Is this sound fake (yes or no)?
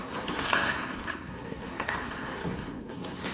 yes